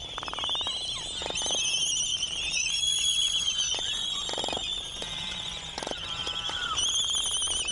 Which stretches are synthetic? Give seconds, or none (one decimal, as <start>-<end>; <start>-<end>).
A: 2.1-6.7